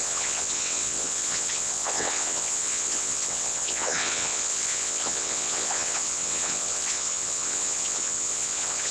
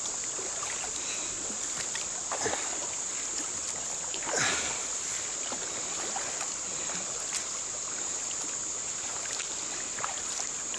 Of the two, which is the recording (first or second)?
second